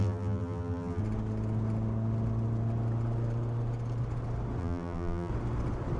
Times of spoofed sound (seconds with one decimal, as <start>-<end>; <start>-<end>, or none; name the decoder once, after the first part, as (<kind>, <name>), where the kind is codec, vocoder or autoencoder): 0.0-1.0 (vocoder, BigVGAN v2); 4.6-5.3